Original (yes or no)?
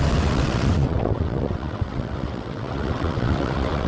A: no